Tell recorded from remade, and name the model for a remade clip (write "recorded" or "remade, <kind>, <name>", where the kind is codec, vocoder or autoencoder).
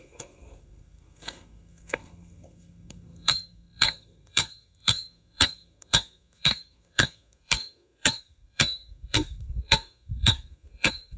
remade, codec, SNAC